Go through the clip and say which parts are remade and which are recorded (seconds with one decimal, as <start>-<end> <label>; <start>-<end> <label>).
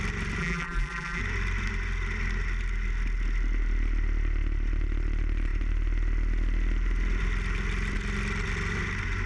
0.0-0.4 recorded; 0.4-1.2 remade; 1.2-9.3 recorded